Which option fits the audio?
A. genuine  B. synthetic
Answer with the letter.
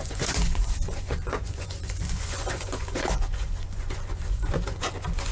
B